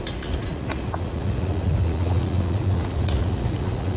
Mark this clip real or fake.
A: fake